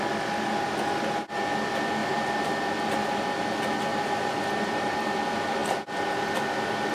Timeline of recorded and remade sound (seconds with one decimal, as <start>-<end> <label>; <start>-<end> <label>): 0.0-2.0 recorded; 2.0-2.5 remade; 2.5-3.9 recorded; 3.9-5.1 remade; 5.1-6.9 recorded